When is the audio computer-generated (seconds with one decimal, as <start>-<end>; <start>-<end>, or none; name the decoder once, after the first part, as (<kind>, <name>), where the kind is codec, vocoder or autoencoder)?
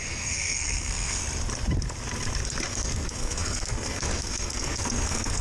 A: 0.0-1.2 (codec, SNAC); 2.7-5.4